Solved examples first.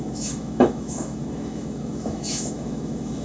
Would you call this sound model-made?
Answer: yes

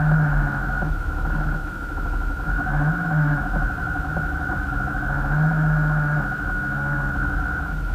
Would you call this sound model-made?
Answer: yes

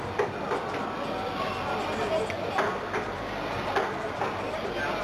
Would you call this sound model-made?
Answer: no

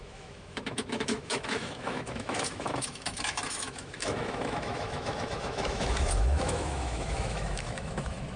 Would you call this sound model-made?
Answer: yes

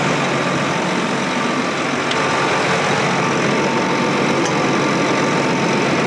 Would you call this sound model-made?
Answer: no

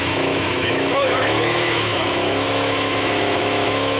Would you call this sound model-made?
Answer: yes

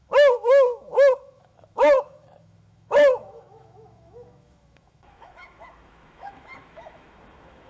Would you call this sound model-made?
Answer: yes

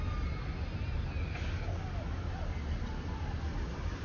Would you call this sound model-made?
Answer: no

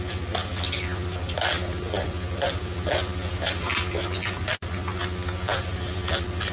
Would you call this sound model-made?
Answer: no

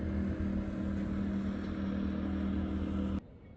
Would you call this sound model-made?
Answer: no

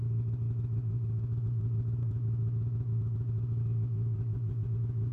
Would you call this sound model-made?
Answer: yes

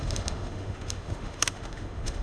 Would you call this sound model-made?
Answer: yes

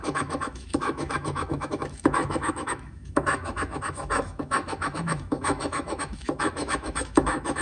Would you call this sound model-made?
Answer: yes